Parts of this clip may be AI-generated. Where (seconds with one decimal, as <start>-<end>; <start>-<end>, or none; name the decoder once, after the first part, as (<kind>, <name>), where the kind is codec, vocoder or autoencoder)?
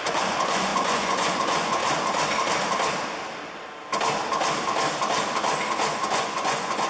0.0-1.8 (vocoder, Vocos); 5.9-6.9